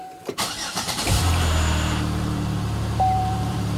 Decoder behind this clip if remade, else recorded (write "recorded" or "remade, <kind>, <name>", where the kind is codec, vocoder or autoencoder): remade, vocoder, BigVGAN v2